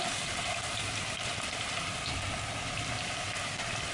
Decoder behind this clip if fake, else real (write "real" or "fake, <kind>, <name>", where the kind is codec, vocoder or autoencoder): real